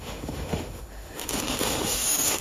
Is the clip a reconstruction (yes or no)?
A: yes